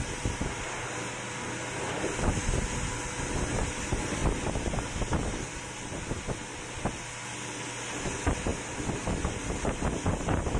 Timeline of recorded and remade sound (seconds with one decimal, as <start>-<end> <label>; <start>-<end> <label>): 0.0-10.6 recorded